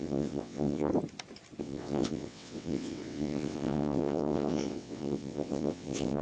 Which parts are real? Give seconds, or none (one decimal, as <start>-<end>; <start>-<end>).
0.9-1.6